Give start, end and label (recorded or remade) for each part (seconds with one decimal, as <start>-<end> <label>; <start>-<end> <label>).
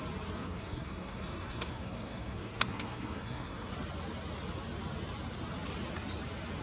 0.0-0.4 recorded; 0.4-3.7 remade; 3.7-6.6 recorded